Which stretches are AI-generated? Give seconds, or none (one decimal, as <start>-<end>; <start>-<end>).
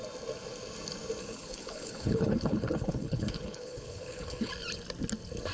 1.2-4.5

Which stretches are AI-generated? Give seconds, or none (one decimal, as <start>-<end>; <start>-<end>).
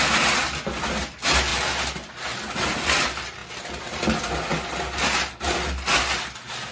none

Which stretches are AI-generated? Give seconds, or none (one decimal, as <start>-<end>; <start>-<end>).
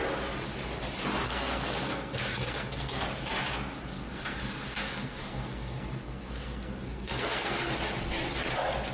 1.2-3.0; 3.9-7.7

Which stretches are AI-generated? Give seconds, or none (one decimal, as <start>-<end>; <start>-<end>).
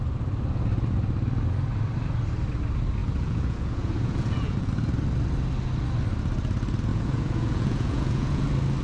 3.0-4.7; 6.9-8.4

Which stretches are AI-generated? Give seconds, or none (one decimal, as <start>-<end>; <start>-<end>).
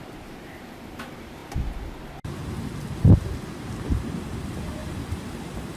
0.0-2.4; 3.7-5.8